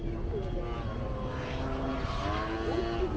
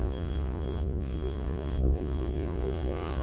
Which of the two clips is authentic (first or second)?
first